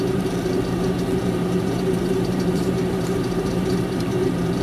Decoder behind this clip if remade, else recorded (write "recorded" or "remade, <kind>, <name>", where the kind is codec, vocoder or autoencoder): remade, vocoder, BigVGAN v2